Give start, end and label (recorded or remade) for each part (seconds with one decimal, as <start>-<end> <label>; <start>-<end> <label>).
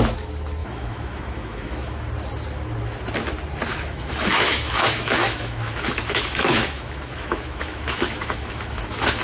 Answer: 0.0-0.6 recorded; 0.6-1.9 remade; 1.9-3.7 recorded; 3.7-9.2 remade